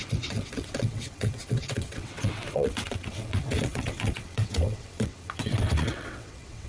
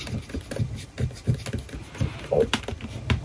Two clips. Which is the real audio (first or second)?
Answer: second